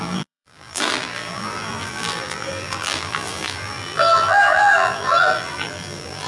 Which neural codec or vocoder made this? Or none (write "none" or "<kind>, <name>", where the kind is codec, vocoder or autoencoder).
vocoder, BigVGAN v2